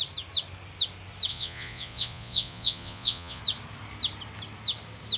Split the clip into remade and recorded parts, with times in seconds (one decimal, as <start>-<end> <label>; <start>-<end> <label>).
0.0-1.3 recorded; 1.3-3.4 remade; 3.4-5.2 recorded